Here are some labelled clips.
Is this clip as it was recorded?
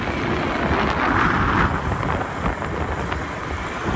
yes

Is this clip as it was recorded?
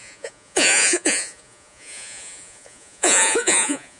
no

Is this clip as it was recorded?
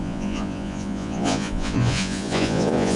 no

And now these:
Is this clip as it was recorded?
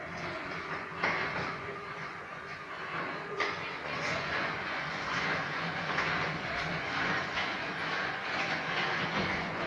no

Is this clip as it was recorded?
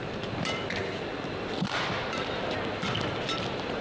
yes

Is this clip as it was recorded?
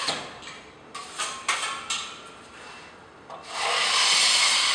yes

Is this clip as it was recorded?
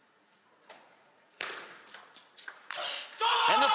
no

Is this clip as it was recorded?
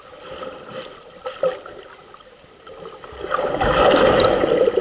yes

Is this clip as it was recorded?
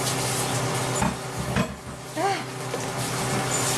yes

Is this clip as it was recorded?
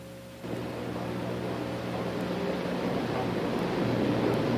yes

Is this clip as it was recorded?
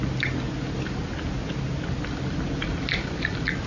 yes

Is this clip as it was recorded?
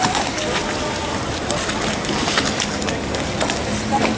yes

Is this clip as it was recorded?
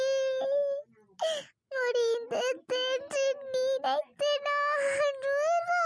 yes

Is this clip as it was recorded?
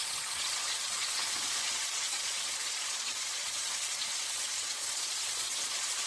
no